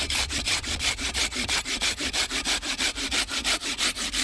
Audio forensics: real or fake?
fake